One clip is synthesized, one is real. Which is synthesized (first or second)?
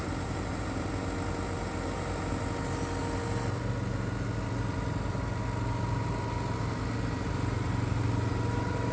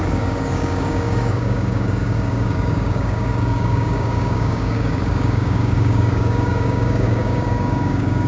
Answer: second